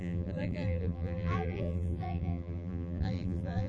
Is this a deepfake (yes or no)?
yes